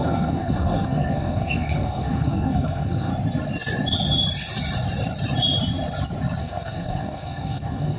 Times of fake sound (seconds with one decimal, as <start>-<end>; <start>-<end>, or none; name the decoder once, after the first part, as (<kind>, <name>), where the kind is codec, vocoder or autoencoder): 0.0-3.1 (codec, SNAC); 6.4-8.0